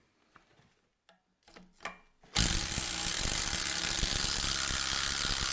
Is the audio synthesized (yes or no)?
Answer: no